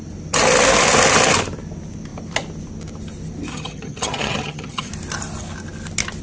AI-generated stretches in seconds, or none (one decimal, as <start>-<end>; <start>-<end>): 3.5-4.9